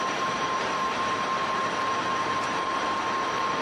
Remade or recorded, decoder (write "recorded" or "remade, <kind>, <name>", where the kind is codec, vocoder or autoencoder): remade, vocoder, BigVGAN v2